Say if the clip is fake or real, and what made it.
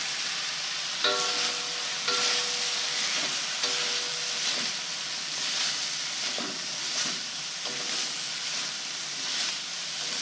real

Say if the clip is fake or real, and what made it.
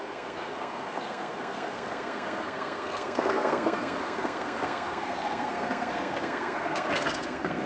fake, codec, SNAC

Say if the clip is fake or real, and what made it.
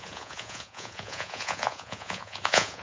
fake, vocoder, Vocos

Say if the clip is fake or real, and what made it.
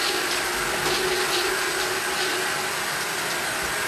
real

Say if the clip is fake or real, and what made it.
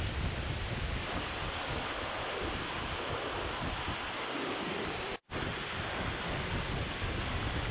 real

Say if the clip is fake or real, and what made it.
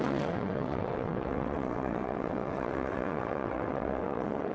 fake, vocoder, WaveNeXt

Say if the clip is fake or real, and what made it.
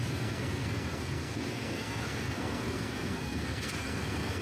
fake, codec, SNAC